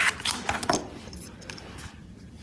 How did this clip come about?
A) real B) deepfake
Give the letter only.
A